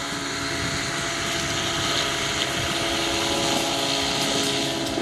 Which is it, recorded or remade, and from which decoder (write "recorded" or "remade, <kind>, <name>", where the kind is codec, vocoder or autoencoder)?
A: recorded